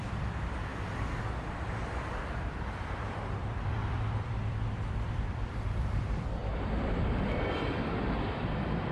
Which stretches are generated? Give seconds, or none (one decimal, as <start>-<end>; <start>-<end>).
0.0-0.7; 3.0-8.9